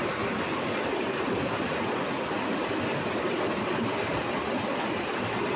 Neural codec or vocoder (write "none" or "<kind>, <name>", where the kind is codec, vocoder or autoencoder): none